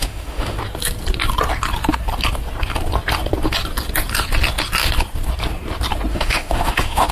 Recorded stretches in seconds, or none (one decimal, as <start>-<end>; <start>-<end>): 0.6-6.1